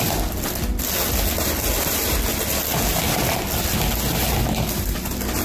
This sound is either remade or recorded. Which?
recorded